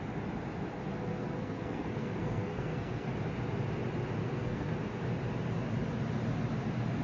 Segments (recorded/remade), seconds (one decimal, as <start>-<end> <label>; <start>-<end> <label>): 0.0-1.1 recorded; 1.1-3.1 remade; 3.1-4.2 recorded; 4.2-4.7 remade; 4.7-7.0 recorded